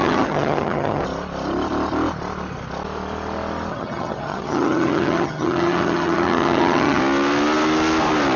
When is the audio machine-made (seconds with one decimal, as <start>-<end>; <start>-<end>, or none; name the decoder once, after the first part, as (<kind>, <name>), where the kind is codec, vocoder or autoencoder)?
0.0-1.0 (vocoder, HiFi-GAN); 3.7-7.0